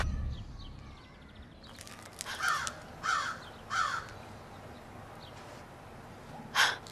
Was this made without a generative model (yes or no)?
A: yes